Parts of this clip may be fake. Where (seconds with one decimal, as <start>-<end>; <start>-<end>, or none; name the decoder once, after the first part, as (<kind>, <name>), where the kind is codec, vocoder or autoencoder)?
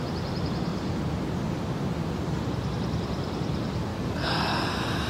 3.9-4.6 (codec, DAC)